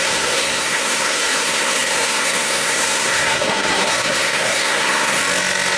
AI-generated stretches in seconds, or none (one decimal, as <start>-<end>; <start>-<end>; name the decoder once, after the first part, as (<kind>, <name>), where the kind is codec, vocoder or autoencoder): 0.0-5.2 (codec, SNAC)